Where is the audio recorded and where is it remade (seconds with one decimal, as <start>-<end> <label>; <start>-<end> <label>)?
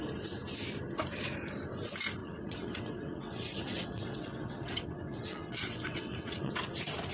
0.0-2.2 recorded; 2.2-6.5 remade; 6.5-7.1 recorded